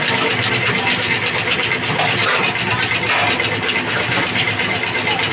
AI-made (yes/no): no